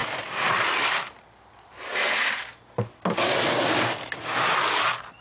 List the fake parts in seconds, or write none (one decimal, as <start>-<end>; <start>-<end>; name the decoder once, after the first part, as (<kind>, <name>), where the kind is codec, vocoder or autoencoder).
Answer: 0.0-1.5 (vocoder, BigVGAN v2)